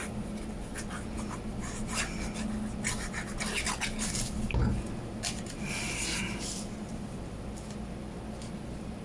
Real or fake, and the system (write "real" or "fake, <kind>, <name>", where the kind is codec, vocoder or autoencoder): real